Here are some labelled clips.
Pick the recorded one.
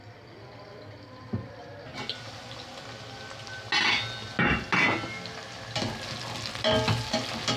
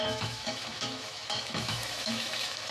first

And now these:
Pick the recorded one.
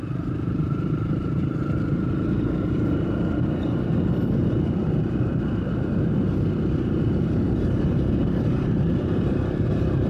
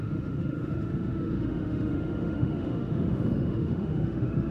first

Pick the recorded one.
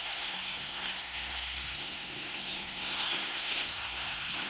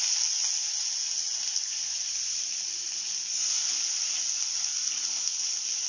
second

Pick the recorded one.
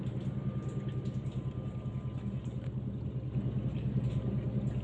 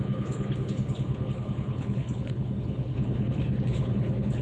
first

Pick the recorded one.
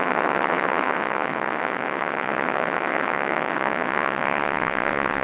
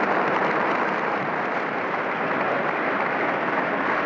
second